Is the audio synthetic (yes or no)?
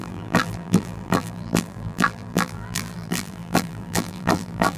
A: yes